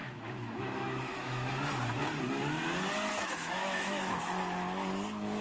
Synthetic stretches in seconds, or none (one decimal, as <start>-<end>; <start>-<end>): 0.0-1.5; 3.1-4.2